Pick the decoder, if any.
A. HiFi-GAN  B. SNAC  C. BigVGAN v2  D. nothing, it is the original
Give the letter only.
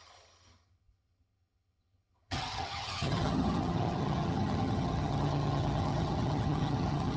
A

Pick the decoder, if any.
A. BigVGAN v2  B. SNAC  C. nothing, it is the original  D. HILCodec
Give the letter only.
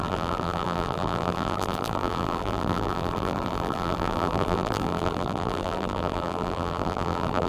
A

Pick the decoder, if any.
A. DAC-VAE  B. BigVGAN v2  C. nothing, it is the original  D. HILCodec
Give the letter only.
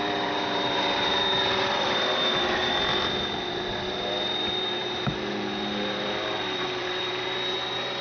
B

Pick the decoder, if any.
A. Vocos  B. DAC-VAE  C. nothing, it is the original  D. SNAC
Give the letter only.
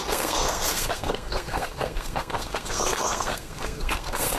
D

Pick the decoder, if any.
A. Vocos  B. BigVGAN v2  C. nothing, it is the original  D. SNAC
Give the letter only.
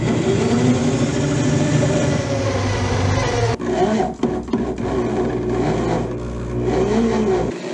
C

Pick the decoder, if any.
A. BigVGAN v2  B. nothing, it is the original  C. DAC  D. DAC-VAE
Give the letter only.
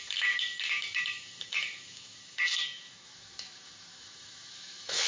D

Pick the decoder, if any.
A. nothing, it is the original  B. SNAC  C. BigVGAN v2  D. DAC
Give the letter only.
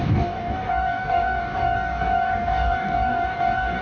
D